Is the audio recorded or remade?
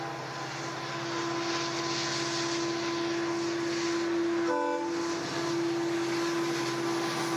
recorded